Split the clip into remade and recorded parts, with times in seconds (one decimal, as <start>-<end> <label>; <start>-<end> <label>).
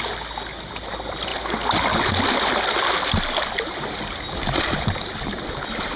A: 0.0-6.0 recorded